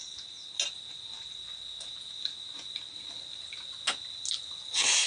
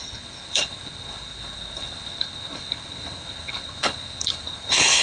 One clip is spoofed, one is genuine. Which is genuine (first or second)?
first